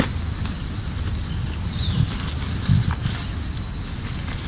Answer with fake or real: real